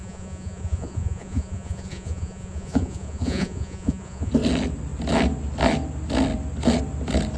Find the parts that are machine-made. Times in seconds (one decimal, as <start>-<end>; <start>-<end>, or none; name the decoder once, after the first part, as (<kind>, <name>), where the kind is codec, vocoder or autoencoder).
0.0-4.3 (vocoder, Vocos)